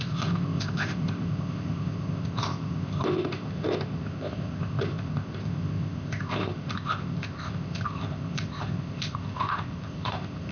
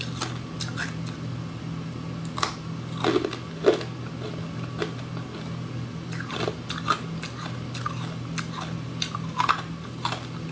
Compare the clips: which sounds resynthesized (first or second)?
first